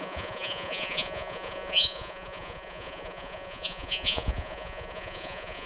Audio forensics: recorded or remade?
remade